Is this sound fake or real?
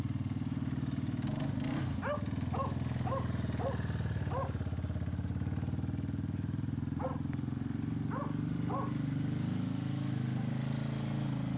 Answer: real